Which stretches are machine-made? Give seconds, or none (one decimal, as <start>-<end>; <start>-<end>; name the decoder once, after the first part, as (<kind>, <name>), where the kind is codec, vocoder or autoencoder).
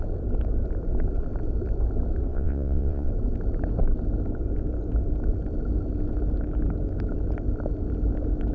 2.3-3.1 (vocoder, WaveNeXt)